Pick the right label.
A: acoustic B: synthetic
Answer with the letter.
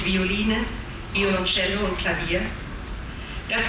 A